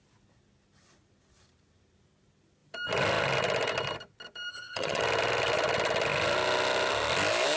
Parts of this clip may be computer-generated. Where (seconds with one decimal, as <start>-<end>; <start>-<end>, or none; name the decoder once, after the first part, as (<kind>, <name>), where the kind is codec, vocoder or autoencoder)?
4.5-5.0 (vocoder, HiFi-GAN)